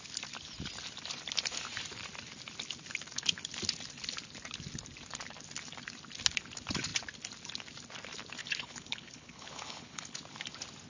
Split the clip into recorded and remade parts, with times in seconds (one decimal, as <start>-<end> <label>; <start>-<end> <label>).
0.0-8.4 recorded; 8.4-10.2 remade; 10.2-10.9 recorded